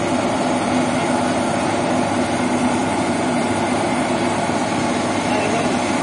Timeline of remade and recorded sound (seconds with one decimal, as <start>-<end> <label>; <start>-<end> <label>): 0.0-2.8 recorded; 2.8-3.4 remade; 3.4-6.0 recorded